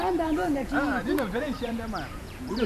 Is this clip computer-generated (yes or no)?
yes